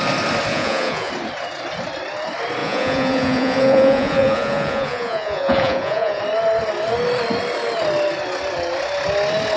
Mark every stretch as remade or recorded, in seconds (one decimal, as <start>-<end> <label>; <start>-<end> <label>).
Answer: 0.0-0.5 recorded; 0.5-1.1 remade; 1.1-2.6 recorded; 2.6-6.2 remade; 6.2-9.6 recorded